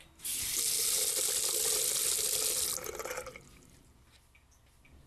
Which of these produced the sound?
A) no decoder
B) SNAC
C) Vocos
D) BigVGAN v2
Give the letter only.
A